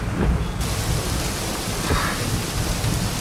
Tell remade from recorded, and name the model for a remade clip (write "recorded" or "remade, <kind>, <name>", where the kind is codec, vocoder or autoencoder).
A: recorded